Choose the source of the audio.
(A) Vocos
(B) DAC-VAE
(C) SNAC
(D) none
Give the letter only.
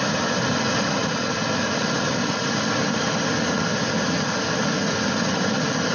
D